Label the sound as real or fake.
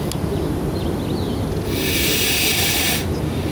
real